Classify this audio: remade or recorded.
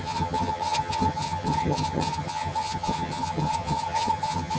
remade